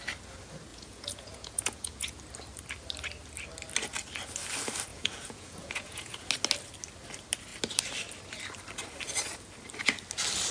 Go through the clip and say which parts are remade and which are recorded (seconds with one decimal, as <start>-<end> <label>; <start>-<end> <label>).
0.0-0.7 recorded; 0.7-2.2 remade; 2.2-4.9 recorded; 4.9-6.3 remade; 6.3-10.5 recorded